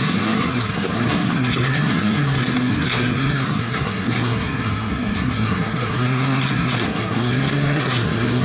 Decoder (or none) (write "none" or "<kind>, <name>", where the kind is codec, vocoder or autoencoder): codec, SNAC